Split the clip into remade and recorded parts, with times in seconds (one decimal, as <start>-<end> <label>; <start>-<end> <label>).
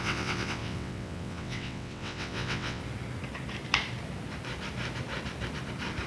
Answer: 0.0-2.8 remade; 2.8-6.1 recorded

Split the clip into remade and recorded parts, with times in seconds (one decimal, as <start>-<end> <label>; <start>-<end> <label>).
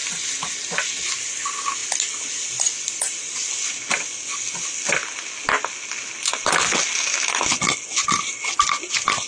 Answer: 0.0-9.3 recorded